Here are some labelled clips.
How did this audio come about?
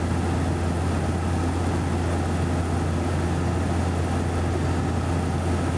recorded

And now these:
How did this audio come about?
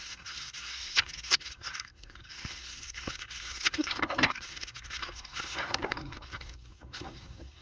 remade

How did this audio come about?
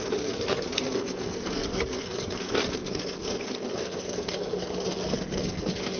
remade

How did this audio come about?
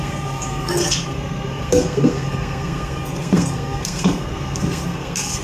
remade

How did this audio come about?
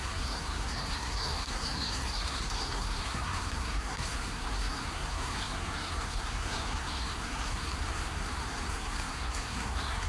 remade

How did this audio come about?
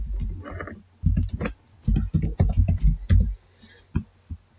recorded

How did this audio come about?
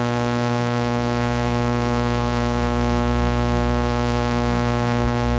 remade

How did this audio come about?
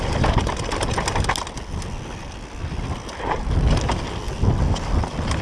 recorded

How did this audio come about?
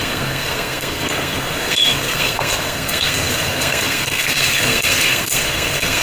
remade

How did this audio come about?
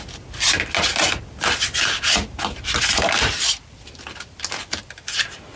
recorded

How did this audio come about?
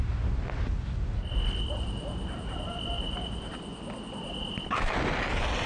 recorded